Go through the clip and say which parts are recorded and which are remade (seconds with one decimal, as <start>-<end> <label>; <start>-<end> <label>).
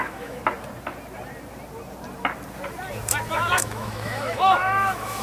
0.0-0.4 remade; 0.4-3.3 recorded; 3.3-5.2 remade